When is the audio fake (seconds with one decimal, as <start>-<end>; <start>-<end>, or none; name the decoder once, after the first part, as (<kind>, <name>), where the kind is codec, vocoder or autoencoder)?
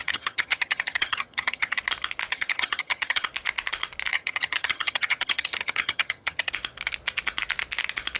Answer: 0.0-1.8 (vocoder, HiFi-GAN); 2.3-3.3; 4.1-6.5